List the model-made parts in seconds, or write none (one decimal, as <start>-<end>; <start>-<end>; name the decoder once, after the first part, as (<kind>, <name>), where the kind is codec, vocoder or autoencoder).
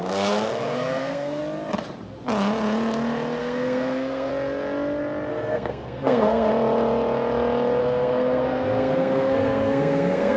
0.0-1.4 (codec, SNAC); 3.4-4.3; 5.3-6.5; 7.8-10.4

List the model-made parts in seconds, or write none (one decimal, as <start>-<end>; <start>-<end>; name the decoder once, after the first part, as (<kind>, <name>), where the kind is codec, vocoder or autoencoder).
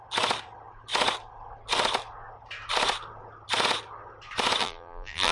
4.6-5.3 (vocoder, BigVGAN v2)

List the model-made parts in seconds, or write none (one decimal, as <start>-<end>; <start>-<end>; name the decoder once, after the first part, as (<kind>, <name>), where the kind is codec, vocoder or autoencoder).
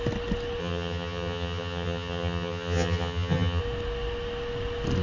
0.6-3.6 (vocoder, HiFi-GAN)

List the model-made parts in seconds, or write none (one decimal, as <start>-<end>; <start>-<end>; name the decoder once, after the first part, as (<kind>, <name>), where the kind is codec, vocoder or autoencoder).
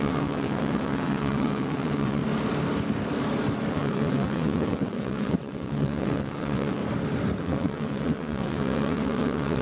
0.0-2.2 (vocoder, WaveNeXt); 3.7-6.8; 7.4-9.6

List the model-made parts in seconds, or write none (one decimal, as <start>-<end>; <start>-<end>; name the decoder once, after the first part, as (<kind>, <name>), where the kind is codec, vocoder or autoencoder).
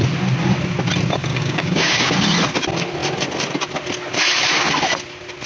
1.3-2.1 (codec, DAC)